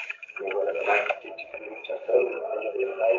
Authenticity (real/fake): fake